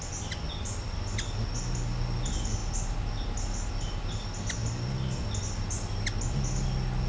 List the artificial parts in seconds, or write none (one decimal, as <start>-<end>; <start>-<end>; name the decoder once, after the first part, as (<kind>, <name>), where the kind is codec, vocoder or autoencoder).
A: none